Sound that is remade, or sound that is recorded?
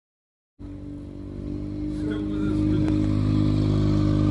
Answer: recorded